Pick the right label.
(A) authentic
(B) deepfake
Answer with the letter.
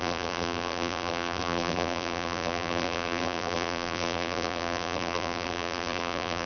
B